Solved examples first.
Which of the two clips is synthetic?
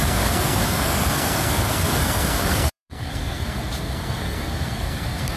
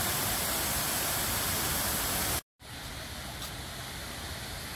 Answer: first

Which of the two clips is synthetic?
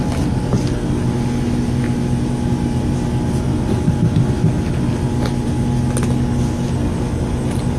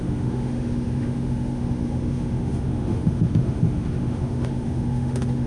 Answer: second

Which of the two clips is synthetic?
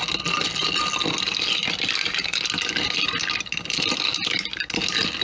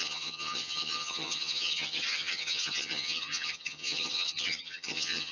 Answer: second